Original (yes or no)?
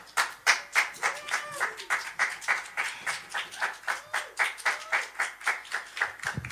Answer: yes